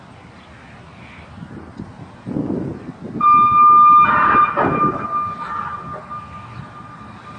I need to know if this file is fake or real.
real